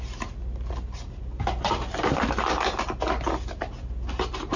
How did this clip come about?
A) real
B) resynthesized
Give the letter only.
A